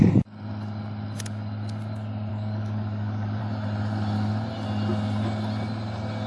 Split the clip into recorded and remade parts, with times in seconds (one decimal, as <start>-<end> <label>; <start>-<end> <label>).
0.0-2.3 recorded; 2.3-3.4 remade; 3.4-6.3 recorded